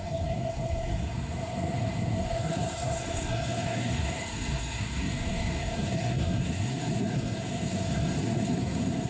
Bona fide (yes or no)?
no